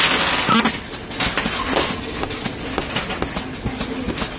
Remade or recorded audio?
recorded